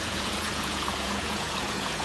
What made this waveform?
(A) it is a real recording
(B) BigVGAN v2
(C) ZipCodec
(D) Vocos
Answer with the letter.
D